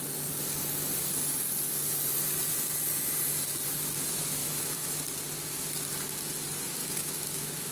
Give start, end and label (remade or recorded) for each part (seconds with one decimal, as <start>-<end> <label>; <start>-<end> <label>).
0.0-4.4 recorded; 4.4-5.0 remade; 5.0-6.8 recorded; 6.8-7.7 remade